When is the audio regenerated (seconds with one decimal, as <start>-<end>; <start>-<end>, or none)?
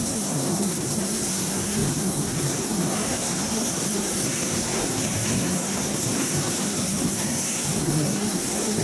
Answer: 0.0-8.8